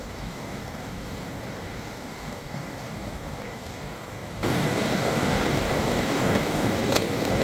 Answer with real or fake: fake